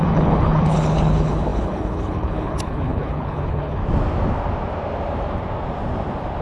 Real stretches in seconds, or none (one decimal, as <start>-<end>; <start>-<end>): 3.8-6.4